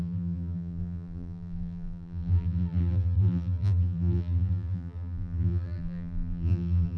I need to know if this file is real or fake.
fake